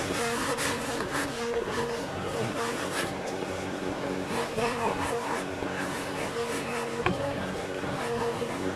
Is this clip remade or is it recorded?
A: remade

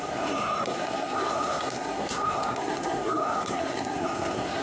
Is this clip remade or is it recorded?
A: remade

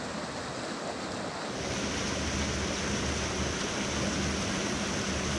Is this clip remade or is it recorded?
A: recorded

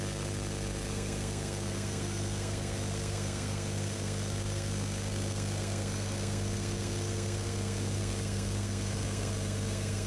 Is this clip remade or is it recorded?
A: remade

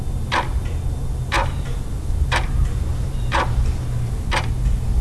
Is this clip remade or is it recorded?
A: recorded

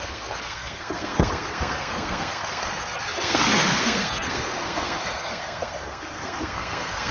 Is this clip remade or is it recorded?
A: remade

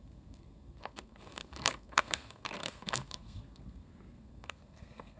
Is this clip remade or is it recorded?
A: remade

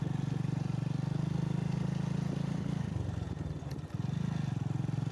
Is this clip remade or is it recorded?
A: recorded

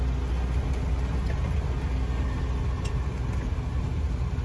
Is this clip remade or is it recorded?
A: recorded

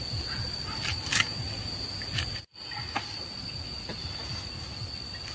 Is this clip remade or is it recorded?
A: recorded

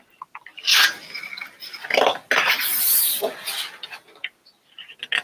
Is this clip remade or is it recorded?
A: recorded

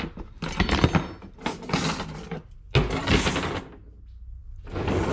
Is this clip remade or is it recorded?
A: recorded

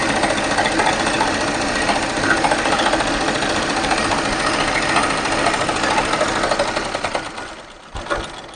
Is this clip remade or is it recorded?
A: recorded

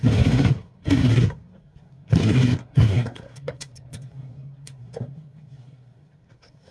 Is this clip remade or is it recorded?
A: remade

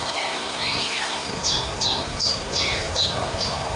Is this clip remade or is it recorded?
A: remade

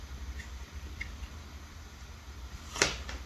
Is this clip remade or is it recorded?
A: recorded